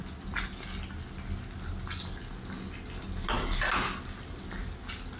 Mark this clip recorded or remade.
recorded